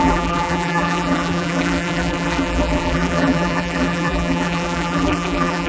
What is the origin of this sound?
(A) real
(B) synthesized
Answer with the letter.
B